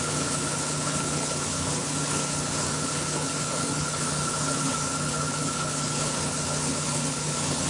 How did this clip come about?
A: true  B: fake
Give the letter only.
B